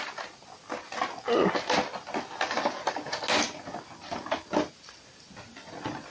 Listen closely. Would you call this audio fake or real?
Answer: real